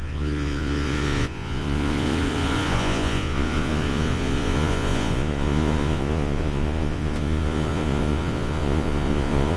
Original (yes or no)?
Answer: no